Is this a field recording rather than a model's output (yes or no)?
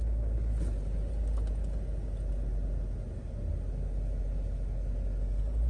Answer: yes